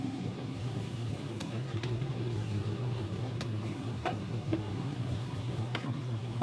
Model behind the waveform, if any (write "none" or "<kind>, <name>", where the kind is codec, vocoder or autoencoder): codec, SNAC